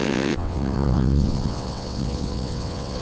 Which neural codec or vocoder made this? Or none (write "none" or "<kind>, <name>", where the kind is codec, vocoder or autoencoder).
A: vocoder, WaveNeXt